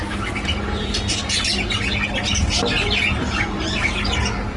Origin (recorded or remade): recorded